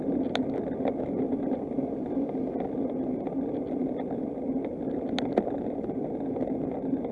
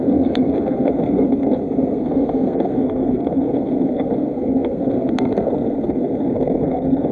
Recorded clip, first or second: first